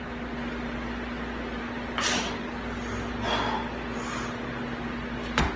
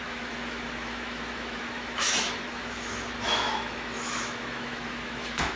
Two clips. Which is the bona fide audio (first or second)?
first